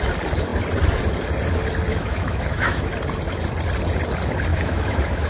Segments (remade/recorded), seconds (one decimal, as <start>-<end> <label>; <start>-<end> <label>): 0.0-1.9 recorded; 1.9-2.9 remade; 2.9-4.5 recorded; 4.5-5.3 remade